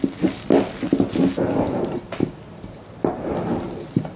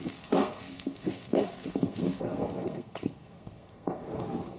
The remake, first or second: second